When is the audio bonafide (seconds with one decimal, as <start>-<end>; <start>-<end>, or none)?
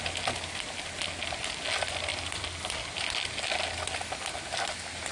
0.0-2.1; 3.4-5.1